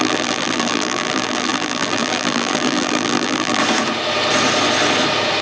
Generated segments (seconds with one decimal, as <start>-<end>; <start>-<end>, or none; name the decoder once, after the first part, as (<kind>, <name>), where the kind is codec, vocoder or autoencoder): 0.0-3.6 (vocoder, BigVGAN v2)